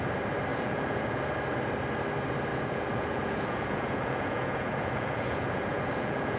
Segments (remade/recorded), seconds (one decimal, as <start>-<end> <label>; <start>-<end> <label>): 0.0-0.5 recorded; 0.5-1.2 remade; 1.2-2.5 recorded; 2.5-6.4 remade